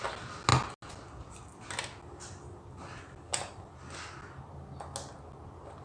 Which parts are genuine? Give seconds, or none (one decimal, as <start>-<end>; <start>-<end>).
0.0-5.8